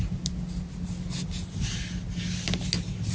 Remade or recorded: recorded